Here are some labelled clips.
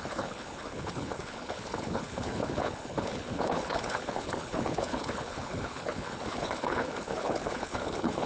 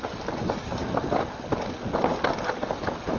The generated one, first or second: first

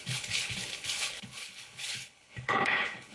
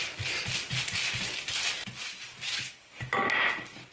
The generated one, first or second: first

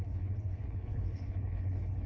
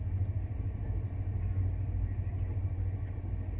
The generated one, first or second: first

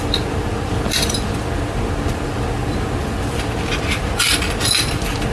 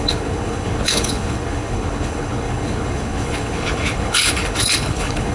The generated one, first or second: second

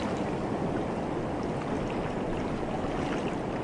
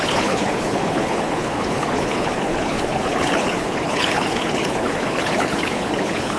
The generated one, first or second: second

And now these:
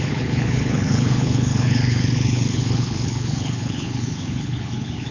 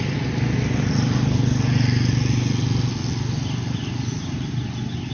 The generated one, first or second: first